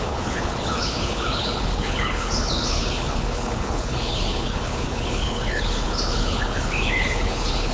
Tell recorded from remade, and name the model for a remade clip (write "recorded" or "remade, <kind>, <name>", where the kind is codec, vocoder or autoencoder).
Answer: remade, codec, HILCodec